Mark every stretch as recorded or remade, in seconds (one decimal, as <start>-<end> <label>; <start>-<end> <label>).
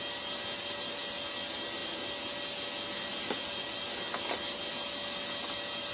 0.0-5.9 recorded